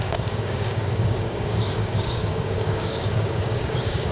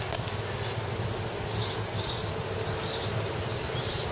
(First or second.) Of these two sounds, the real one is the second